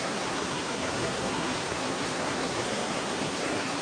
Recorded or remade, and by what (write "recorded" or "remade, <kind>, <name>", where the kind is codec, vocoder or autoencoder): remade, codec, SNAC